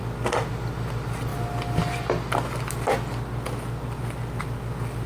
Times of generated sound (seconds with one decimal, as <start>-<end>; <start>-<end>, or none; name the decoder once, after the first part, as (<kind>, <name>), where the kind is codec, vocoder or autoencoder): none